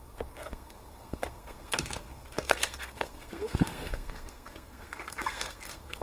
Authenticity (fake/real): fake